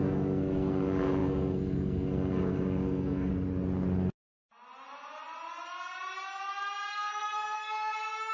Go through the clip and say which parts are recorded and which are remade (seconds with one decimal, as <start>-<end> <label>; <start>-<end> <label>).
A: 0.0-3.3 remade; 3.3-6.9 recorded; 6.9-8.3 remade